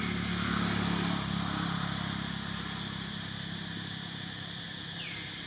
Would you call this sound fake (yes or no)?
no